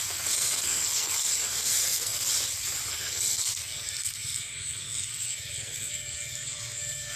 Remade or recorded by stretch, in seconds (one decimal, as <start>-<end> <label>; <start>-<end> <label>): 0.0-2.2 remade; 2.2-2.9 recorded; 2.9-7.2 remade